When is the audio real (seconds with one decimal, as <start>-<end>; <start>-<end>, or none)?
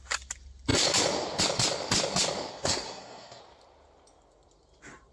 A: 0.0-2.5; 3.4-5.1